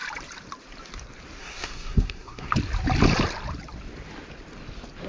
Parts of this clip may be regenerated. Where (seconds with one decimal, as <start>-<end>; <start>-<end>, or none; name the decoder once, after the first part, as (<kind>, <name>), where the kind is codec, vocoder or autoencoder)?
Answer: 1.4-2.5 (codec, SNAC)